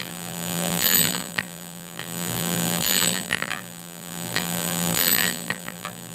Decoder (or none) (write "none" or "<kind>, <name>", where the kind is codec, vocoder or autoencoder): vocoder, BigVGAN v2